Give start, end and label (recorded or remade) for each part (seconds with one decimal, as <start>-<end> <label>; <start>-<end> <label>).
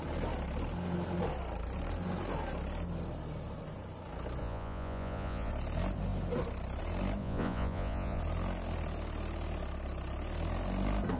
0.0-4.4 recorded; 4.4-5.5 remade; 5.5-7.2 recorded; 7.2-8.2 remade; 8.2-11.2 recorded